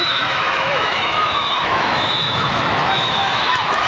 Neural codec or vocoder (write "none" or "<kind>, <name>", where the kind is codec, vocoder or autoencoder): autoencoder, DAC-VAE